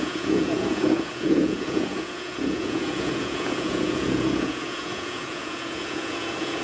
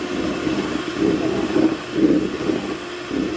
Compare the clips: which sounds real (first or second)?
second